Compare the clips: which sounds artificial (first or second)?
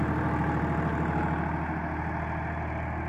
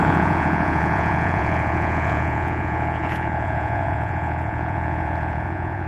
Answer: second